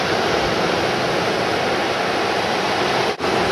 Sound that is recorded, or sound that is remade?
recorded